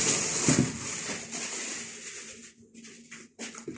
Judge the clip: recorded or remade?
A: recorded